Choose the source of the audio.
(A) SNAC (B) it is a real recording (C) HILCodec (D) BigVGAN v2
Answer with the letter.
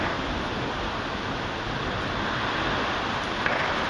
B